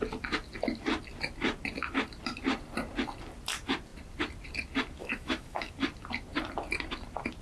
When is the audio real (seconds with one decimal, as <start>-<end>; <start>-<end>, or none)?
0.0-5.0; 5.7-7.4